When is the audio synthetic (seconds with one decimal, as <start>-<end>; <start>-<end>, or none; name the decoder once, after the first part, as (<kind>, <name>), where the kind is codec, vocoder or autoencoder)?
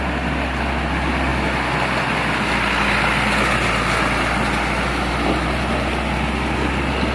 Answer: none